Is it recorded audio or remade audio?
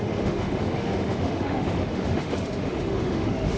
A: remade